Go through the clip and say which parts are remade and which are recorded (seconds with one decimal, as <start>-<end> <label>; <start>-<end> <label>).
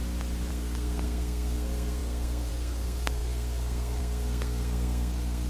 0.0-0.5 recorded; 0.5-5.5 remade